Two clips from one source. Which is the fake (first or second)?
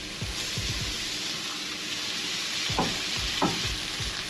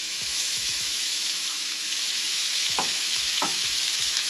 second